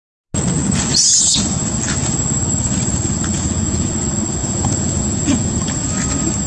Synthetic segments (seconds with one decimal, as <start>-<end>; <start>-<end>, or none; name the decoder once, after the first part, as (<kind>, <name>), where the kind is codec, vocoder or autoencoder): 3.3-3.9 (vocoder, Vocos); 4.4-5.9

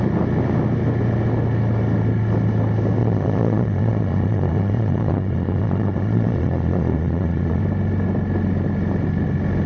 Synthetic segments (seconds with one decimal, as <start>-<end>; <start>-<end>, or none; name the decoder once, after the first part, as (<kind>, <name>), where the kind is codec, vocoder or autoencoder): 3.0-7.6 (vocoder, Vocos)

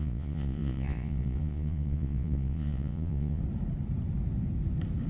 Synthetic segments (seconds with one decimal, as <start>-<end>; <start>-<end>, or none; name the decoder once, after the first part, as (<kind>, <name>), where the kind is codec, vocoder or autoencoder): 0.0-3.4 (vocoder, Vocos)

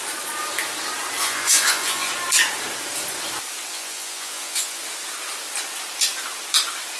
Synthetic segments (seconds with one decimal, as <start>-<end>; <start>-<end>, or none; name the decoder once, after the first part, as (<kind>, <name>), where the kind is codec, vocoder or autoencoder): 1.2-2.1 (vocoder, Vocos); 3.7-4.8

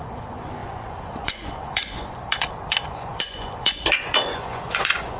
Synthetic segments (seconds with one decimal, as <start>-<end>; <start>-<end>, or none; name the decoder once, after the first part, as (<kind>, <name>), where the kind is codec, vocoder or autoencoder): 0.0-5.2 (vocoder, Vocos)

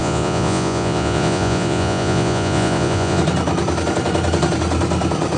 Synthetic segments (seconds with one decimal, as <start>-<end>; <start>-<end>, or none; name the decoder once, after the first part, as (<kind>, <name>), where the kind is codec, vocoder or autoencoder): 0.0-3.2 (vocoder, Vocos)